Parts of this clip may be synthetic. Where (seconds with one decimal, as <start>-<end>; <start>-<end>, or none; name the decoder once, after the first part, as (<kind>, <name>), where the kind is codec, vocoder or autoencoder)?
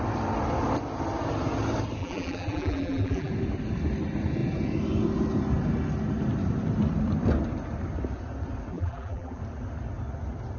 2.0-3.3 (vocoder, BigVGAN v2); 8.7-9.4